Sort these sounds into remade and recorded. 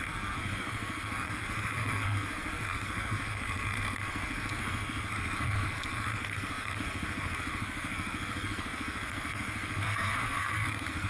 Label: remade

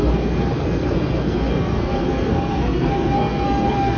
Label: remade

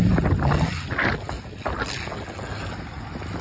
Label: recorded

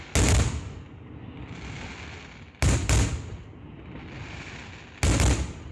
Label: recorded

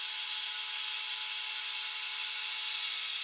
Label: recorded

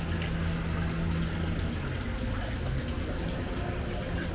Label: recorded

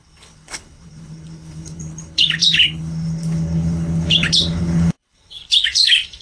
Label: remade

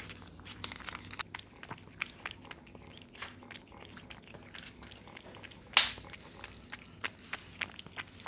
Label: recorded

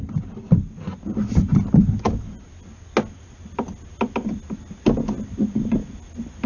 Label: recorded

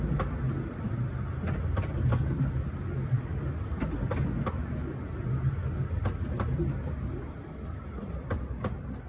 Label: recorded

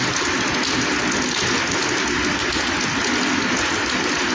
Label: recorded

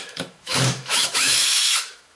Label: remade